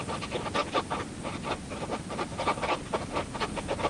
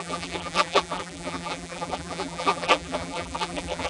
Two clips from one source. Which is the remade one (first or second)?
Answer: second